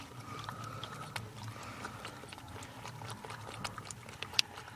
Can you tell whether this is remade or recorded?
remade